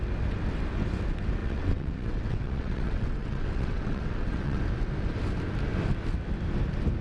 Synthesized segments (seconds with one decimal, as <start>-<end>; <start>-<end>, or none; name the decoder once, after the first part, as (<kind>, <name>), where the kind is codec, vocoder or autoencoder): 1.4-4.6 (vocoder, WaveNeXt)